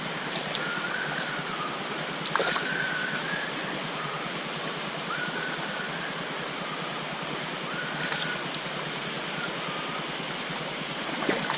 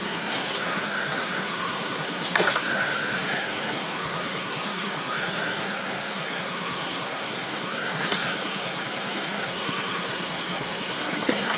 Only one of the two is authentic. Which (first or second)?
first